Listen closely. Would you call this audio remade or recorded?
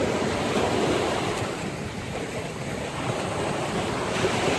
recorded